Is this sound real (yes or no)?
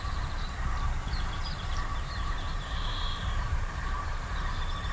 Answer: no